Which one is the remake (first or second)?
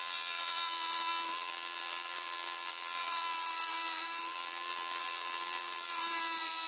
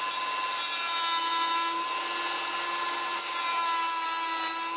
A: first